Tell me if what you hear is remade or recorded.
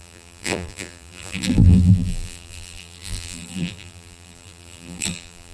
remade